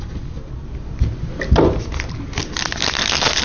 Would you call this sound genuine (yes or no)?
yes